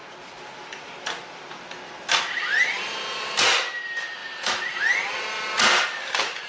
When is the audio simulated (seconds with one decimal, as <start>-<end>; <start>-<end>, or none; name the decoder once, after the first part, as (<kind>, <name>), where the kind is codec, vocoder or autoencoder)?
4.2-4.8 (vocoder, BigVGAN v2)